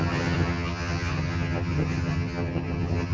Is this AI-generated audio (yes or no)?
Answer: yes